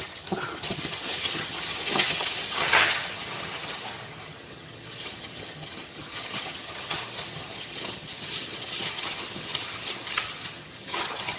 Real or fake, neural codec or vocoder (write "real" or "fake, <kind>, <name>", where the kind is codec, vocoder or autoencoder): fake, vocoder, HiFi-GAN